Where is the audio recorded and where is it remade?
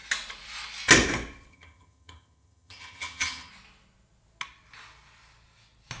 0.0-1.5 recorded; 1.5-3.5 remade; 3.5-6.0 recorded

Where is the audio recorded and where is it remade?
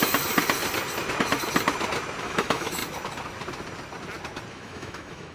0.0-2.2 recorded; 2.2-2.8 remade; 2.8-4.5 recorded; 4.5-5.3 remade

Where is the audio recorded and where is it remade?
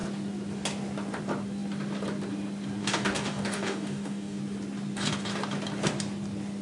0.0-2.8 recorded; 2.8-4.4 remade; 4.4-6.6 recorded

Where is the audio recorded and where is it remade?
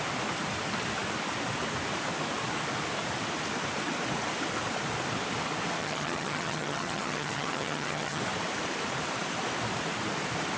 0.0-5.8 recorded; 5.8-8.2 remade; 8.2-10.6 recorded